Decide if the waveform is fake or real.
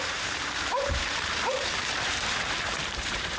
fake